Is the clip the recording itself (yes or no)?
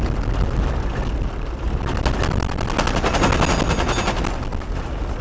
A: yes